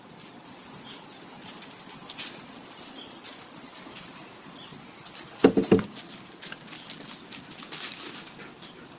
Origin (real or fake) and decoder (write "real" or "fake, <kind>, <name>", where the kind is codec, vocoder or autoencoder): real